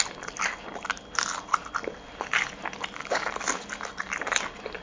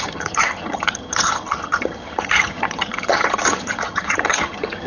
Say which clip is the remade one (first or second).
second